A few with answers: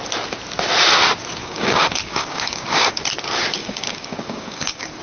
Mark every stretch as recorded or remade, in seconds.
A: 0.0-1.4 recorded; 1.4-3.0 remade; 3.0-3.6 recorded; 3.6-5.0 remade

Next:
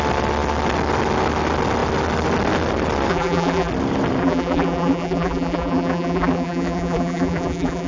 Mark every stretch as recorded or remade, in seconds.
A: 0.0-3.1 recorded; 3.1-3.7 remade; 3.7-4.2 recorded; 4.2-7.9 remade

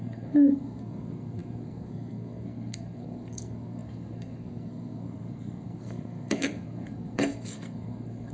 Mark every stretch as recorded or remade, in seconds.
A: 0.0-8.3 remade

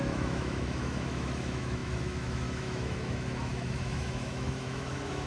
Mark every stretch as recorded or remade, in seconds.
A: 0.0-5.3 remade